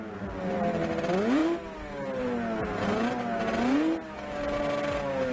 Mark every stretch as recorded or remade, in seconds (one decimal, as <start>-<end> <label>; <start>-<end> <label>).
0.0-5.3 recorded